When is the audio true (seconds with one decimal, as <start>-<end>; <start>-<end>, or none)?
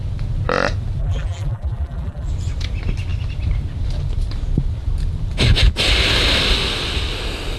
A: 0.0-1.0; 2.3-7.6